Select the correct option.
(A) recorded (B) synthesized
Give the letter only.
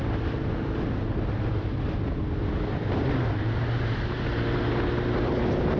A